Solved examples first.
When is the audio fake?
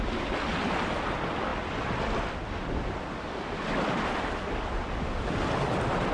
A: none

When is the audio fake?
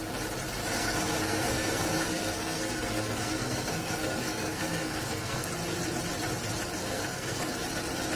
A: 0.6-5.5 (codec, SNAC); 6.8-7.5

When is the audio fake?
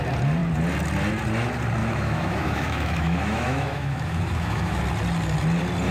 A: 1.8-4.8 (autoencoder, DAC-VAE)